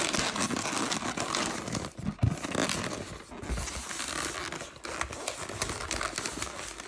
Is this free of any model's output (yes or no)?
yes